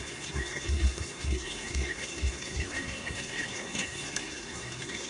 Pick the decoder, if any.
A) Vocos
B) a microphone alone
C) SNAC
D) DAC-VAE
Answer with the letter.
C